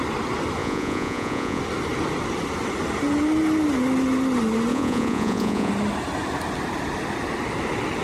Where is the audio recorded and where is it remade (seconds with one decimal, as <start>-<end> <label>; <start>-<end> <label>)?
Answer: 0.0-0.6 recorded; 0.6-1.6 remade; 1.6-4.7 recorded; 4.7-5.7 remade; 5.7-8.0 recorded